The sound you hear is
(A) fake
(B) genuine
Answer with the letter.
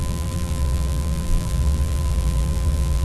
A